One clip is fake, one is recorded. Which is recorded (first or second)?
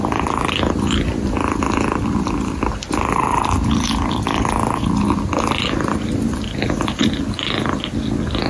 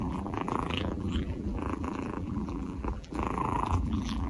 first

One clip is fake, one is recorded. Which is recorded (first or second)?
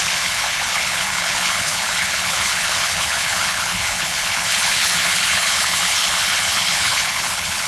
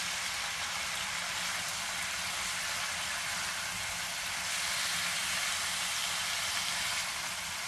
second